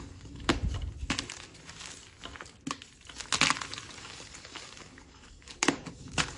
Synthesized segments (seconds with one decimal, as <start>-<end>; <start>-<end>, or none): 0.0-0.5; 4.0-6.4